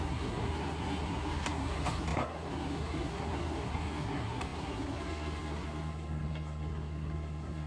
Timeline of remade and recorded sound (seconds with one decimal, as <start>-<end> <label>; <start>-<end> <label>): 0.0-7.7 remade